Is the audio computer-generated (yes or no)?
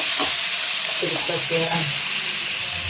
no